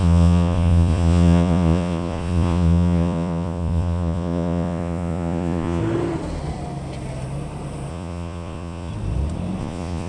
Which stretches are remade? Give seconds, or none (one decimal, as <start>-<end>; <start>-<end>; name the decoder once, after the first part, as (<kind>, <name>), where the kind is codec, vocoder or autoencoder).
0.0-5.8 (vocoder, Vocos); 7.9-8.9; 9.6-10.1